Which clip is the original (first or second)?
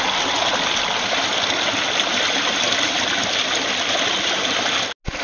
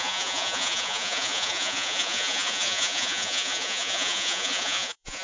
first